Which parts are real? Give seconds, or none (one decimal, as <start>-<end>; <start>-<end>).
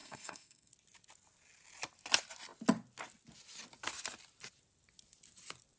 0.7-5.8